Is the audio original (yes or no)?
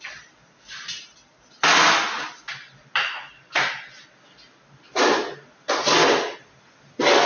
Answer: yes